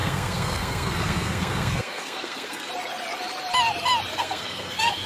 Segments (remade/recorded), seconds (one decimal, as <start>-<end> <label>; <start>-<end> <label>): 0.0-2.7 remade; 2.7-4.1 recorded; 4.1-5.1 remade